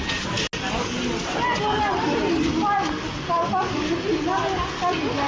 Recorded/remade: recorded